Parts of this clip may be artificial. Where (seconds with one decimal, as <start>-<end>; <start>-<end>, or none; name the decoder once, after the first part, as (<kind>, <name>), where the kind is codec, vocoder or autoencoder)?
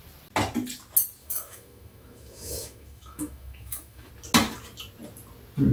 1.2-4.1 (autoencoder, DAC-VAE)